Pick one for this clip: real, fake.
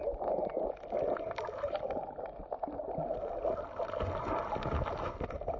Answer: real